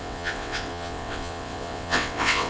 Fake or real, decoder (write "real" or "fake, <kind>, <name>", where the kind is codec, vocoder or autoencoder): fake, vocoder, WaveNeXt